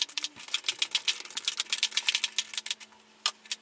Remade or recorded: recorded